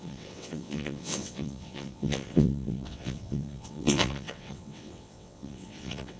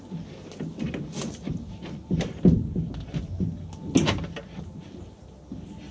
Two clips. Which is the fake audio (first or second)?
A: first